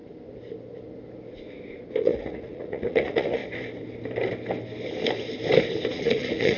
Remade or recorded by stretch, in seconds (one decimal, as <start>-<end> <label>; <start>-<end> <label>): 0.0-2.0 recorded; 2.0-3.4 remade; 3.4-5.9 recorded; 5.9-6.6 remade